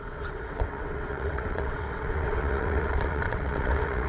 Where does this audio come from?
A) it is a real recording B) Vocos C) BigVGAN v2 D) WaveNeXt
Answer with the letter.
D